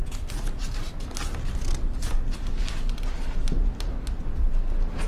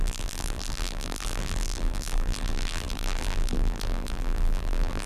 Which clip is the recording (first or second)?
first